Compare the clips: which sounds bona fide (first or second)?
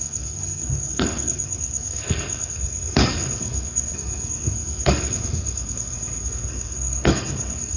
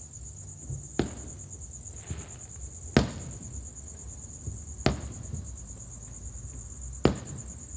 second